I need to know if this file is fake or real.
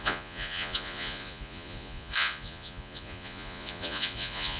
fake